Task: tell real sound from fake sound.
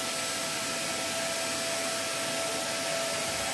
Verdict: real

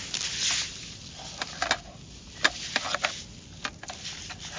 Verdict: real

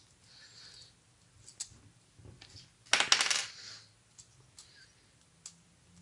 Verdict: real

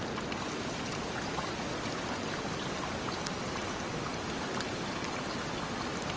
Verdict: real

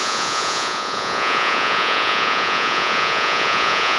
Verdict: fake